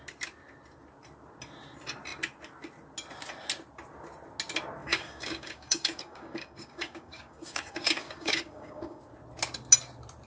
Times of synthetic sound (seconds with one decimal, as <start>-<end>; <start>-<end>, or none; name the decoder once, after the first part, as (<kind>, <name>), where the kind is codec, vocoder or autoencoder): 4.8-9.0 (codec, DAC)